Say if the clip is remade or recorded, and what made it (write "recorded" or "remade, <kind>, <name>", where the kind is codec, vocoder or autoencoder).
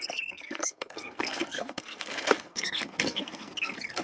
remade, codec, SNAC